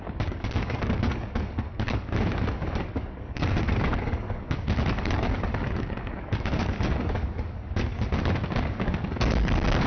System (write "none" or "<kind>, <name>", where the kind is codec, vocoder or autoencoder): codec, DAC